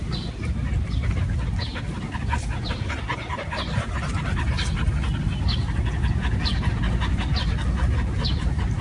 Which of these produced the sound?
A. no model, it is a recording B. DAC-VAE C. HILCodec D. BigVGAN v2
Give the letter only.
A